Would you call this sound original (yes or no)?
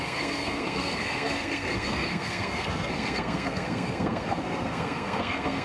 no